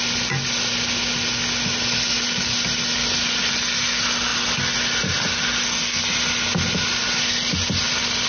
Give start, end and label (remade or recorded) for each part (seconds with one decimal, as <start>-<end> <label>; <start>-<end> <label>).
0.0-8.3 recorded